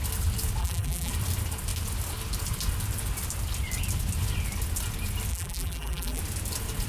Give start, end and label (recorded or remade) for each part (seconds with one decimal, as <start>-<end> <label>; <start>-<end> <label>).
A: 0.0-0.6 recorded; 0.6-1.1 remade; 1.1-5.3 recorded; 5.3-6.2 remade; 6.2-6.9 recorded